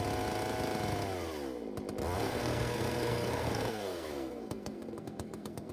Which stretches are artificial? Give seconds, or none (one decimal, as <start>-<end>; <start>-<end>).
2.2-5.7